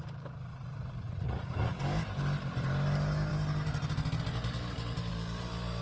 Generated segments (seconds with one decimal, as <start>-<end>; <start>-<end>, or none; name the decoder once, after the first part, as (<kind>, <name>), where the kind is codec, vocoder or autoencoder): 0.5-1.7 (vocoder, Vocos)